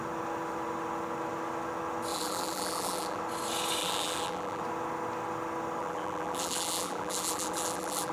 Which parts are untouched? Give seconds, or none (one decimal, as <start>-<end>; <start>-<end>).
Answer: 0.0-2.1; 3.2-3.8; 4.6-5.8